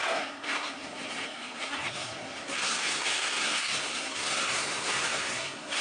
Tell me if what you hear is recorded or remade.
remade